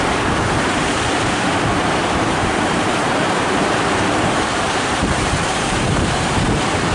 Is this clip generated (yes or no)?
yes